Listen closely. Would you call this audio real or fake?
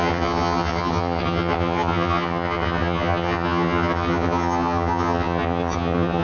fake